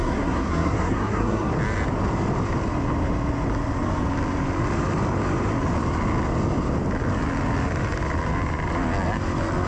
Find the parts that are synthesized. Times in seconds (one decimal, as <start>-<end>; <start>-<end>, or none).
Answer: 0.0-1.5